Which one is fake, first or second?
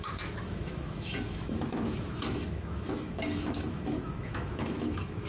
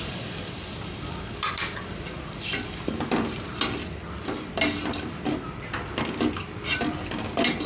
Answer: first